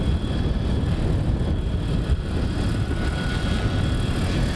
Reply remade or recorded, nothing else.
recorded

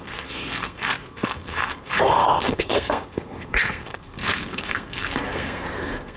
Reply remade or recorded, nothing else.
remade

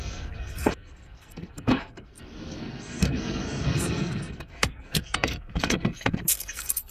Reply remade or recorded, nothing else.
remade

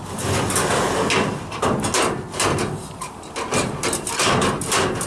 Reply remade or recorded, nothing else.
recorded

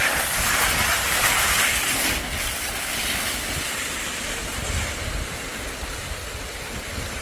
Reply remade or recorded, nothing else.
recorded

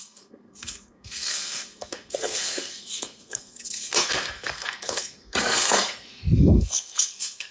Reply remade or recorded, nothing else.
remade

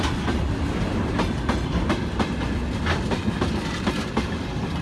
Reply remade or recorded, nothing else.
recorded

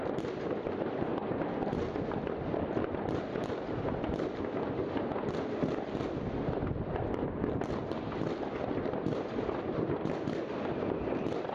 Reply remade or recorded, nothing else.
recorded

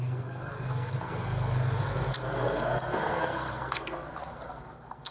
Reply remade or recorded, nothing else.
remade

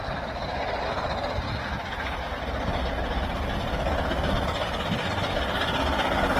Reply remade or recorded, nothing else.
recorded